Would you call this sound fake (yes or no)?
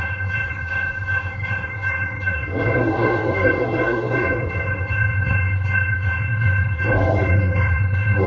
yes